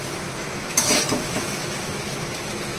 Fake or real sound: fake